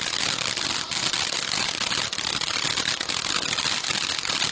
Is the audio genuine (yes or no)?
yes